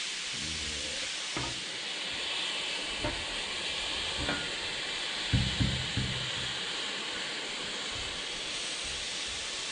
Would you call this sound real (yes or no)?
yes